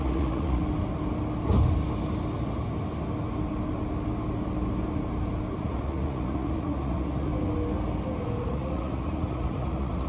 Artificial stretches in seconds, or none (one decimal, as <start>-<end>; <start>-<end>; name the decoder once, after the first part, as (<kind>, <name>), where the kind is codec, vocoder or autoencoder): 0.0-0.6 (vocoder, Vocos); 5.6-7.3; 8.4-10.1